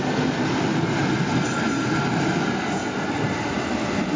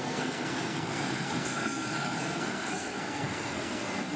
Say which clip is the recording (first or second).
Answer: first